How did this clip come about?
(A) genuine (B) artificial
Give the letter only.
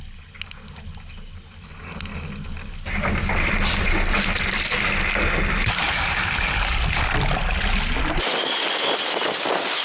A